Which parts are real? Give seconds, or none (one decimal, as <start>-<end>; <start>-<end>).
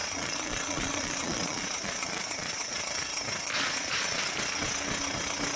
2.8-3.5; 4.2-5.6